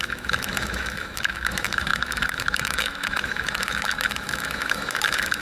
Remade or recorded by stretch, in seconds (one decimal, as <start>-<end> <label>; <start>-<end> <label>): 0.0-5.4 remade